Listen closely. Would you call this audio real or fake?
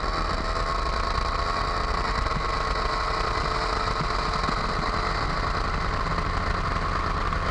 real